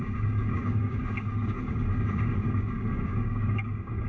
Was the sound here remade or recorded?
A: remade